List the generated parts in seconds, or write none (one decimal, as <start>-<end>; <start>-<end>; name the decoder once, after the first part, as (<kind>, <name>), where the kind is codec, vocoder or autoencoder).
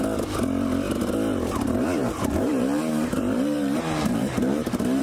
2.0-5.0 (vocoder, BigVGAN v2)